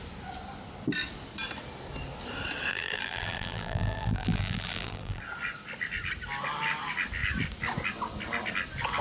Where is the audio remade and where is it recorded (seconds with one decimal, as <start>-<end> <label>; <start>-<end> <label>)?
0.0-2.7 recorded; 2.7-5.2 remade; 5.2-9.0 recorded